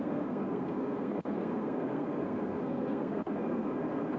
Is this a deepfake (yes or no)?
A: yes